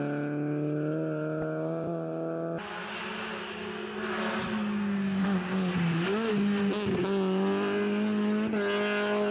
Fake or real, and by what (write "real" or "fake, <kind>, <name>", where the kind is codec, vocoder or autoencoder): real